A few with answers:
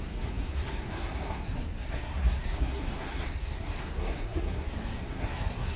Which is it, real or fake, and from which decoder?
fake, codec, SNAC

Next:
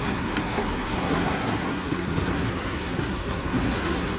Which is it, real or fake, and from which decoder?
fake, codec, SNAC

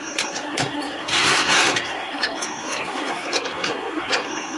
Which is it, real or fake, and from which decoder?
fake, codec, SNAC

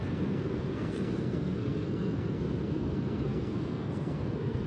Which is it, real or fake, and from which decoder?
fake, codec, SNAC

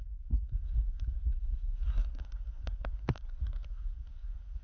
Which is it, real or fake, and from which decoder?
fake, codec, SNAC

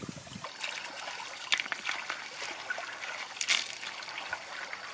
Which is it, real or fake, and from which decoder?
real